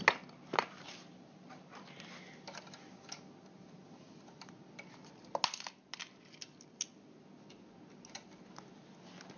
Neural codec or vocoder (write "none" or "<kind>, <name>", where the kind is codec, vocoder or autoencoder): none